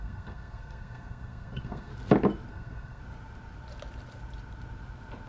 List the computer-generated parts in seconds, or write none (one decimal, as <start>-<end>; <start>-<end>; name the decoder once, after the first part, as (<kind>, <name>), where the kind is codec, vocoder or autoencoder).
0.0-1.9 (codec, SNAC); 2.5-3.0